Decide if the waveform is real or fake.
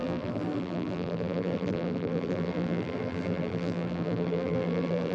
fake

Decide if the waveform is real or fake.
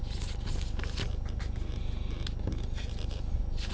real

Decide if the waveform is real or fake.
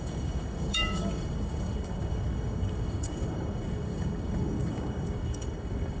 fake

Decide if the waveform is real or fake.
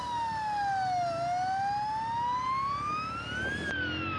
real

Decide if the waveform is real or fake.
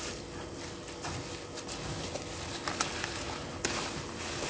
real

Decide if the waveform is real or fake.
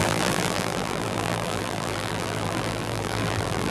fake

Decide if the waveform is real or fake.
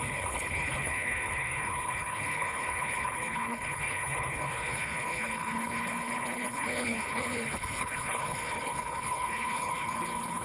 fake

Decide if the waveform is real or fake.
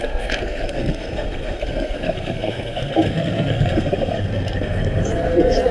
fake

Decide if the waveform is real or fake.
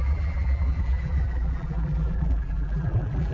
fake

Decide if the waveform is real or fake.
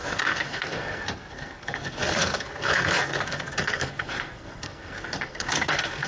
fake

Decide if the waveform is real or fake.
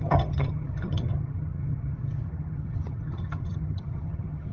fake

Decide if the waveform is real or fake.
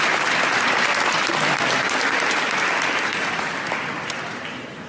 real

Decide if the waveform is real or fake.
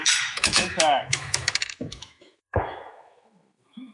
fake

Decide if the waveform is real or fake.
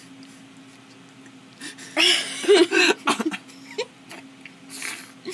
real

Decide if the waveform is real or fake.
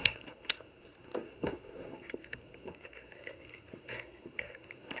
fake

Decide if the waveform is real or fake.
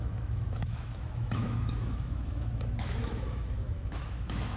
fake